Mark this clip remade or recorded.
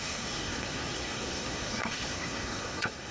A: remade